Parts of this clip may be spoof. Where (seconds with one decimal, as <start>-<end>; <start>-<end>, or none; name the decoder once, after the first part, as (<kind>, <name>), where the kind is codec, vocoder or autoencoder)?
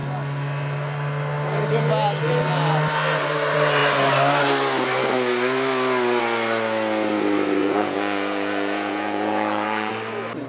7.6-9.9 (vocoder, Vocos)